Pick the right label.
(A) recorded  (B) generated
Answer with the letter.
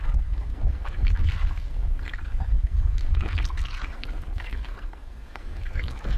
B